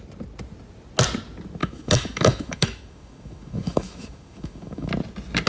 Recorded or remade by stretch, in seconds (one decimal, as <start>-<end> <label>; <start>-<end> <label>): 0.0-1.6 recorded; 1.6-4.9 remade; 4.9-5.5 recorded